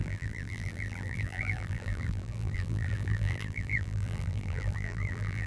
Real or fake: fake